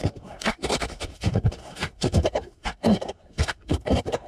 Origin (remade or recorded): remade